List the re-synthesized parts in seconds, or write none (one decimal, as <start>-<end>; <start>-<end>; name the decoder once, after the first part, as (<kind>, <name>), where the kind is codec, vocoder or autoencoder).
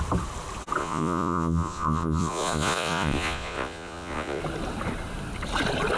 0.8-4.4 (vocoder, Vocos)